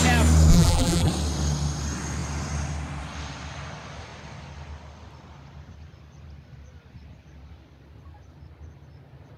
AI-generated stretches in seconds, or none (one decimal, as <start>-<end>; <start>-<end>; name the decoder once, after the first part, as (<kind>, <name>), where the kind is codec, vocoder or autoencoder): 0.5-1.1 (vocoder, BigVGAN v2)